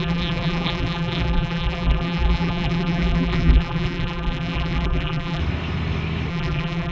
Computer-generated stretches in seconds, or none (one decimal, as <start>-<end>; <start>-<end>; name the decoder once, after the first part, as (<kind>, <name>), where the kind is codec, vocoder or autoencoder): 0.0-5.4 (vocoder, BigVGAN v2); 6.3-6.9